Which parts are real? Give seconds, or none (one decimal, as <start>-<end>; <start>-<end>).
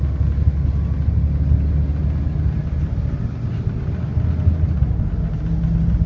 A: 0.0-6.1